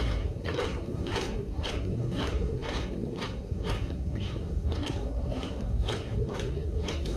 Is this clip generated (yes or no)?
yes